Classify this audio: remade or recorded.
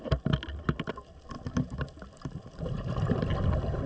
recorded